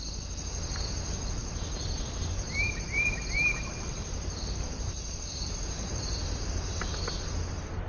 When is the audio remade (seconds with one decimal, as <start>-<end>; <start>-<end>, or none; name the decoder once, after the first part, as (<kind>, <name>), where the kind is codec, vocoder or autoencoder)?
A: 1.4-6.0 (vocoder, BigVGAN v2)